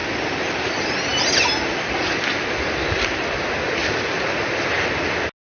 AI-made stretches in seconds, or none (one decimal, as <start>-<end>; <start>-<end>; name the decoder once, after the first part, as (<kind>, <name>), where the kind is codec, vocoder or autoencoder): 3.8-4.7 (vocoder, BigVGAN v2)